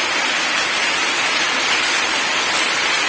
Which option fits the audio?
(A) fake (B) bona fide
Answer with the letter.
B